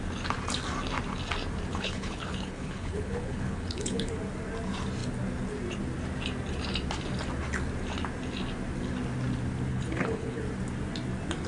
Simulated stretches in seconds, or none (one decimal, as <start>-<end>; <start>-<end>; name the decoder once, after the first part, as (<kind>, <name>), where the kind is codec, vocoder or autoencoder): 1.7-4.1 (codec, HILCodec); 9.7-10.4